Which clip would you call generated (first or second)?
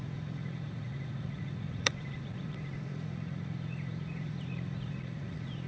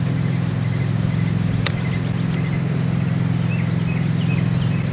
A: first